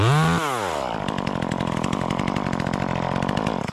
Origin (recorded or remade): recorded